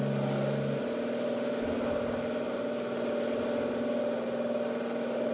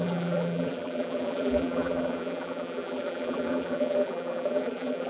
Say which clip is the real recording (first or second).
first